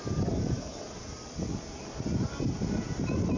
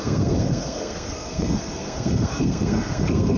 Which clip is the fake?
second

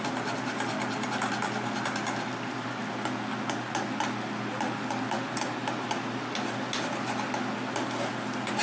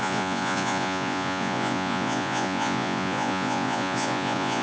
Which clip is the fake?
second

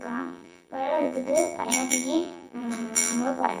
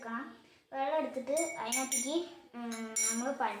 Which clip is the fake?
first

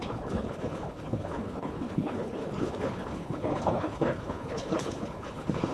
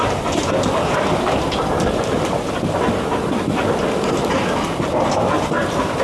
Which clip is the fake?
first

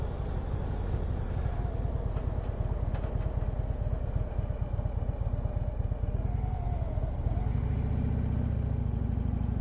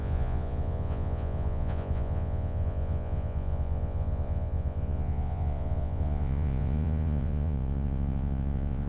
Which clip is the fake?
second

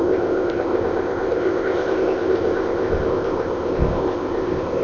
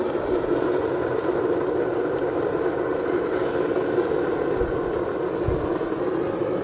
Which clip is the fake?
first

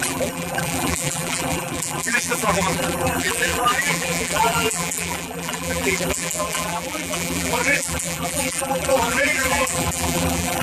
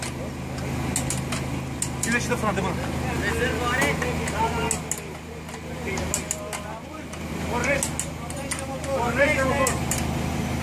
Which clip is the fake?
first